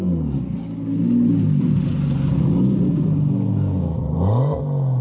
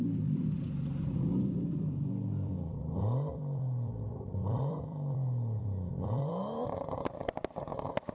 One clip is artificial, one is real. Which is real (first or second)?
first